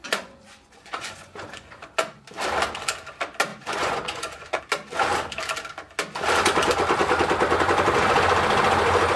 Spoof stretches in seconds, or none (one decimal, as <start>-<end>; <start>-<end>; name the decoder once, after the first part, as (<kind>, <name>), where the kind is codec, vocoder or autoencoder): 0.0-2.2 (vocoder, Vocos); 3.5-4.6